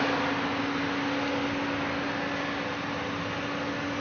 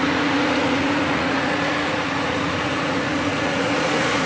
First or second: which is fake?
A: second